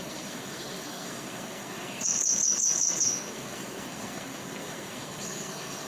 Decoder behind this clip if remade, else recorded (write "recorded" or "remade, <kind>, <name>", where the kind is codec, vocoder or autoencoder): remade, codec, SNAC